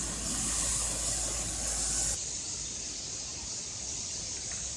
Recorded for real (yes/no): yes